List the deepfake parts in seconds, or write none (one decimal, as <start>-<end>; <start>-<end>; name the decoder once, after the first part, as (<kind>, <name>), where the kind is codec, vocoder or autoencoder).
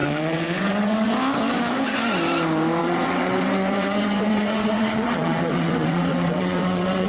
0.0-1.1 (vocoder, WaveNeXt); 2.8-7.1